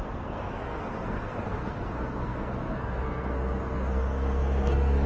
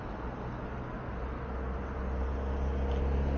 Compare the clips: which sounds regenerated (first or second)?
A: first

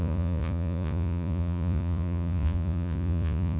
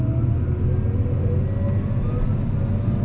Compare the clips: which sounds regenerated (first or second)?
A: first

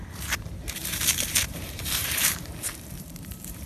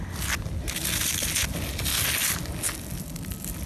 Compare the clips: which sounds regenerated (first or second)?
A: first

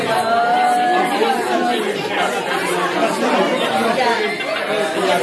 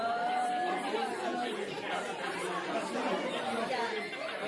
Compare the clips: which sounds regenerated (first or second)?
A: second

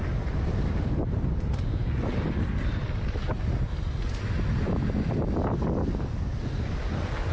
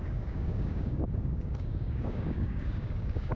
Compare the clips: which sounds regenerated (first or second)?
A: second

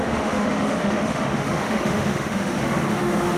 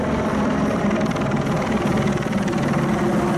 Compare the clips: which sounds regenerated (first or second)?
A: first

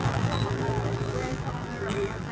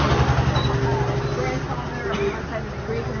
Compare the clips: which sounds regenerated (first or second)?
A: first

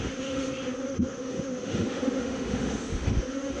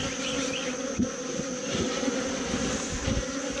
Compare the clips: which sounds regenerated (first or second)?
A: first